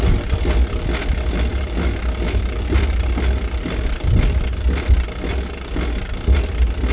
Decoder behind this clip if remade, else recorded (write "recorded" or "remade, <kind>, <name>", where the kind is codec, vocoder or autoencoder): recorded